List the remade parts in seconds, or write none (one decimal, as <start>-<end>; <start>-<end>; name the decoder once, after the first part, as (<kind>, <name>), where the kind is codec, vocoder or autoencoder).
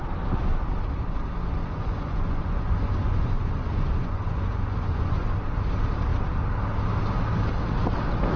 1.6-5.3 (vocoder, Vocos)